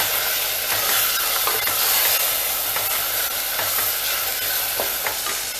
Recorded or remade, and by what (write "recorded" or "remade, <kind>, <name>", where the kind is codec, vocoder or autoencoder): recorded